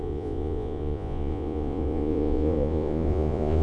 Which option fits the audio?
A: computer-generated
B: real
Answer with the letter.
A